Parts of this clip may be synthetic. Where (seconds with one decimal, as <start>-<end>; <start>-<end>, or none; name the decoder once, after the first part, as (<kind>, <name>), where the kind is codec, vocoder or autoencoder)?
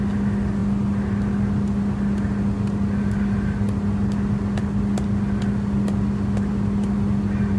none